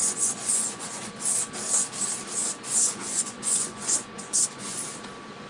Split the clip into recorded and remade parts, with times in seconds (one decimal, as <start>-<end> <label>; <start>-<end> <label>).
0.0-1.1 remade; 1.1-2.4 recorded; 2.4-4.8 remade; 4.8-5.5 recorded